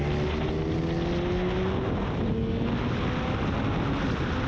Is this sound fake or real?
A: real